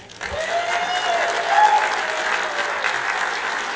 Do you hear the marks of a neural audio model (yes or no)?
no